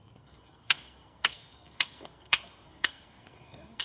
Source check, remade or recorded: remade